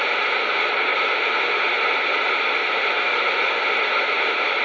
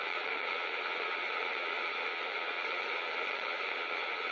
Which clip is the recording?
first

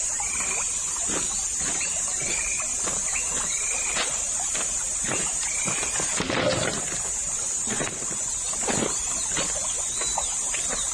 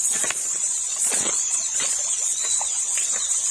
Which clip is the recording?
first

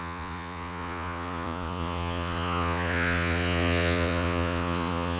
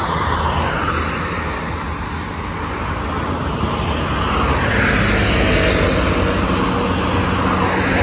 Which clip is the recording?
second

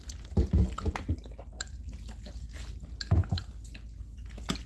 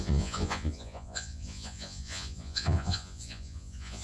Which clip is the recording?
first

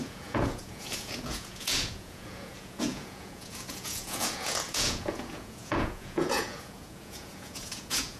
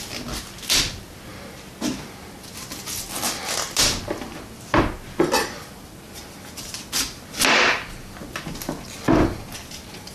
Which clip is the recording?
second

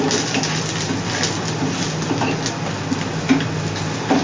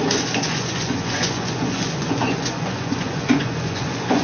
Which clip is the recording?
first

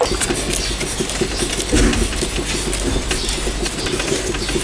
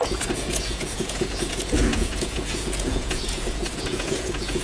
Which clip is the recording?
first